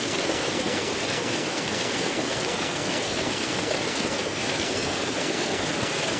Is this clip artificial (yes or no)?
yes